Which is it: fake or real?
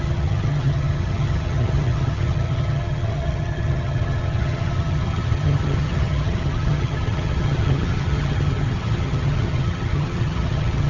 fake